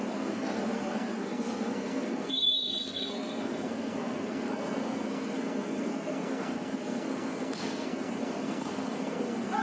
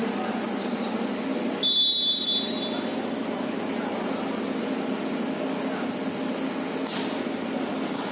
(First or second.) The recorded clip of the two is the second